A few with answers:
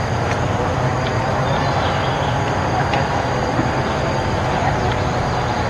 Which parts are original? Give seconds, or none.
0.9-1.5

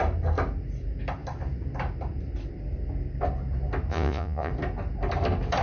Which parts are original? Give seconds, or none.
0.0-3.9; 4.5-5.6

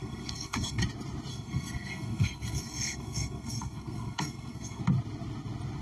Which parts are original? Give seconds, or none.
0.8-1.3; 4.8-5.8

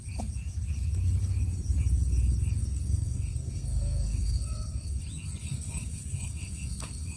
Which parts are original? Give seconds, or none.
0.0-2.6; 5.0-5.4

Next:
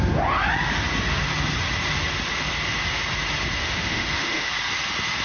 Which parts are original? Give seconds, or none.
0.0-3.6; 4.5-5.2